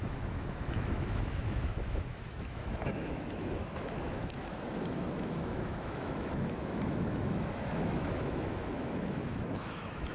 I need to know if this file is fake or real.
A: fake